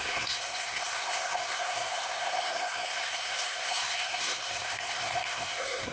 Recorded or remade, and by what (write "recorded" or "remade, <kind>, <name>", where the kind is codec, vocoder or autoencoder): remade, codec, SNAC